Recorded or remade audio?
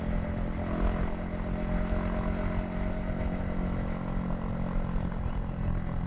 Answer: recorded